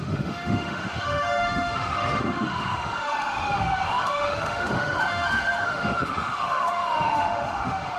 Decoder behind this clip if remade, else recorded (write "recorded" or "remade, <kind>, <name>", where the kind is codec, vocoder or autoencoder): remade, autoencoder, DAC-VAE